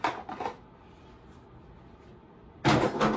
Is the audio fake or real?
real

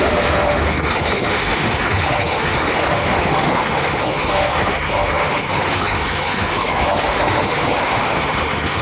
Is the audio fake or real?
fake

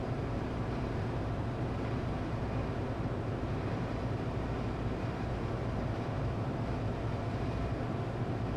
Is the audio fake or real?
fake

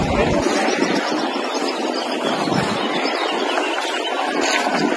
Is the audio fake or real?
real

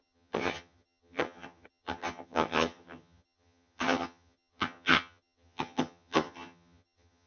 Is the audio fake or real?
fake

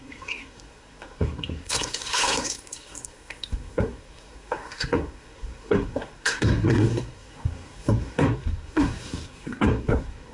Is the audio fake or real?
fake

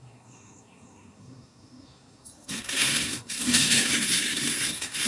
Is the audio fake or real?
fake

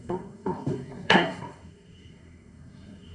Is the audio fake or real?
fake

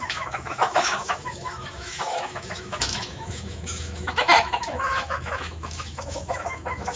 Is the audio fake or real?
fake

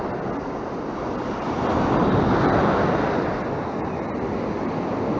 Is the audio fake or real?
real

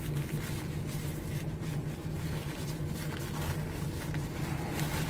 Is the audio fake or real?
real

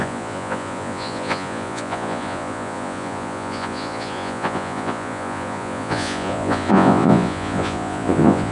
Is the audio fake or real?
fake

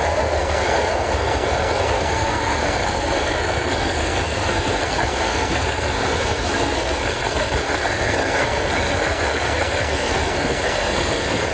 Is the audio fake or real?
fake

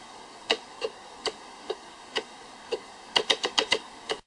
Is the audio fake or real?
fake